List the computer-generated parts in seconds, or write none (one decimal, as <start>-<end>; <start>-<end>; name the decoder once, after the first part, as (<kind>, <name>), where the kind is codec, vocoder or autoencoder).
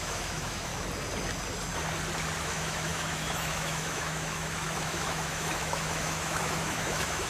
0.0-0.7 (autoencoder, DAC-VAE); 2.4-7.3